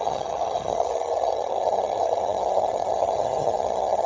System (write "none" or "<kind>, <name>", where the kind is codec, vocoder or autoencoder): vocoder, HiFi-GAN